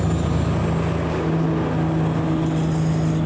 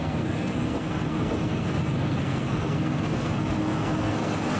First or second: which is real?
first